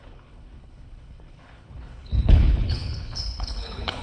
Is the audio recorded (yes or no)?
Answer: no